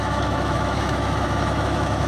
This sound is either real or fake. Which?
fake